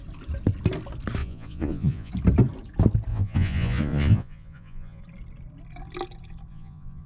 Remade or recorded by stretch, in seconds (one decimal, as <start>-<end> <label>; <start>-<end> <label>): 0.0-1.2 recorded; 1.2-2.1 remade; 2.1-3.1 recorded; 3.1-5.0 remade; 5.0-6.5 recorded; 6.5-7.1 remade